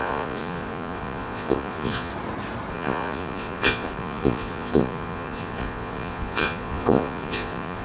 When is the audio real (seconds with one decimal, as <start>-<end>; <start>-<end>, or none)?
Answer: 2.1-2.7